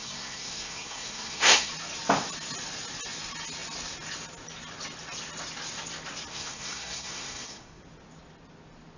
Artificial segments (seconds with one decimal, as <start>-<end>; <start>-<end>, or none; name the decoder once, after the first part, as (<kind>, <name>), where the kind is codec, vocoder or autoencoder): 0.0-1.7 (codec, SNAC); 6.3-7.8